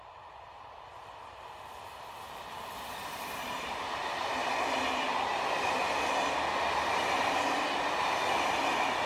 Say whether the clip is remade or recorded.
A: recorded